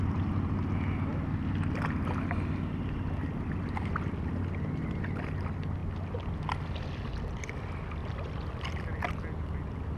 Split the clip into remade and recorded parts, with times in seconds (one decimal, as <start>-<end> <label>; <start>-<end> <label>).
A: 0.0-10.0 recorded